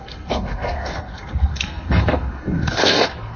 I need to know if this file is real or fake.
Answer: fake